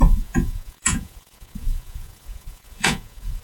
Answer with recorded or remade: remade